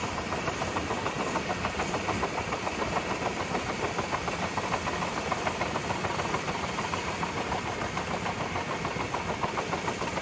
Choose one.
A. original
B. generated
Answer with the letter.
B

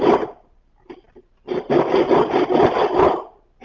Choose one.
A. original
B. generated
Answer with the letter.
A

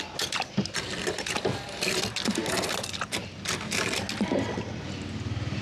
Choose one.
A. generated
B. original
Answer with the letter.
B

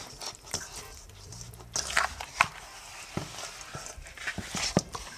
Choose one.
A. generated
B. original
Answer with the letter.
B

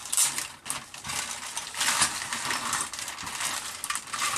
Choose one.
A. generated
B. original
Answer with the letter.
B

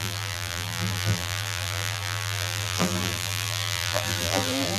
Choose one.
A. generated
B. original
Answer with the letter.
A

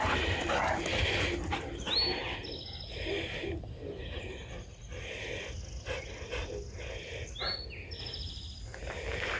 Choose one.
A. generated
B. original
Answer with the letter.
B